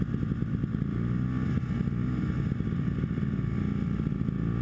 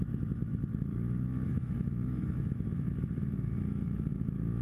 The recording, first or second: first